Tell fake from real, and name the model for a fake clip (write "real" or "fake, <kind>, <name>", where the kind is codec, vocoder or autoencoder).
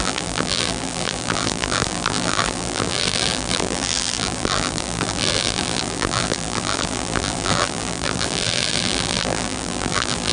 fake, vocoder, BigVGAN v2